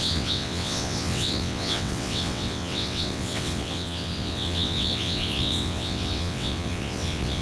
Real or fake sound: fake